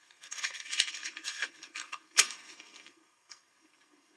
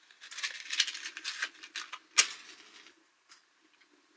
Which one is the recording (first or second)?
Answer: second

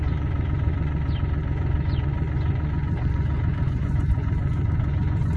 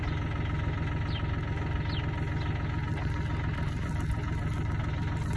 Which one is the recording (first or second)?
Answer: second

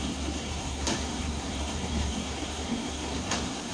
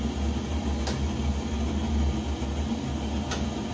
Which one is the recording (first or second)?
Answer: second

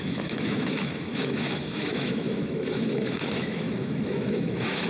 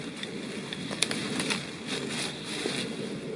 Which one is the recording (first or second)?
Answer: second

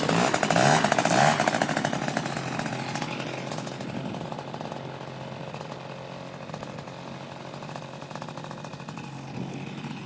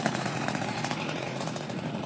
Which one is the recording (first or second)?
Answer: first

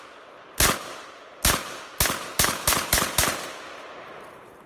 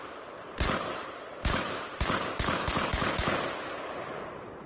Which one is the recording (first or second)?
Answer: first